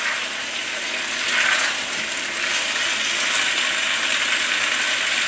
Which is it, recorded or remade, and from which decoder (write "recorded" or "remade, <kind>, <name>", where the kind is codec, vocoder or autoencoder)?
recorded